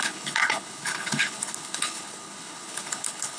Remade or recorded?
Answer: remade